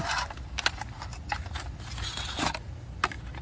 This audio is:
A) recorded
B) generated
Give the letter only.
A